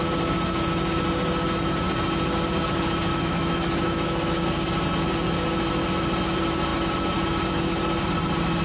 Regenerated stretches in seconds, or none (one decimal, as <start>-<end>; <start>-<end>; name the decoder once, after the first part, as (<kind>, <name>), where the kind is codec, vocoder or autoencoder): 3.1-4.4 (autoencoder, DAC-VAE)